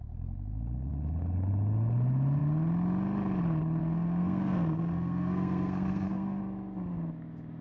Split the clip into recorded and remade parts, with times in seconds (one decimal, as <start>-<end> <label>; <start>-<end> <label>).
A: 0.0-3.8 recorded; 3.8-6.4 remade; 6.4-7.6 recorded